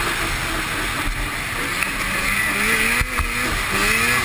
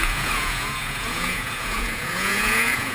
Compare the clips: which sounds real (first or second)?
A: first